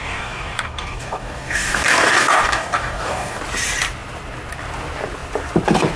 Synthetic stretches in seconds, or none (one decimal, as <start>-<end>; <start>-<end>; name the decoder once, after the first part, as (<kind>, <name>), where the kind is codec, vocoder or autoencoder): 0.0-3.4 (codec, DAC)